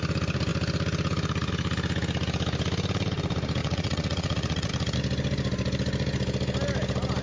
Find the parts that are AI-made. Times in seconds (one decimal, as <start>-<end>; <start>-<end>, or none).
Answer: 3.6-4.7